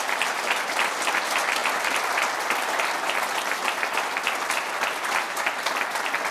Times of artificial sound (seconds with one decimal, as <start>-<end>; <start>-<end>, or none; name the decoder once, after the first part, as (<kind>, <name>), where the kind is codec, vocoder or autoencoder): none